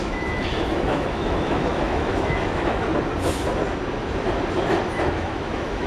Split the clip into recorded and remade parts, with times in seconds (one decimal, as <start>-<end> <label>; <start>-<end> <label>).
0.0-2.9 remade; 2.9-5.0 recorded; 5.0-5.9 remade